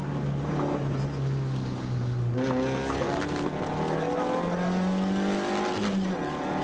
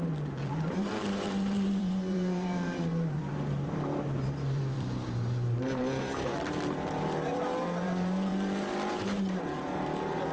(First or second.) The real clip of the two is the first